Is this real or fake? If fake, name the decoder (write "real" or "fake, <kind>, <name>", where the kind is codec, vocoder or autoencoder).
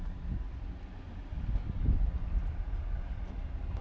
real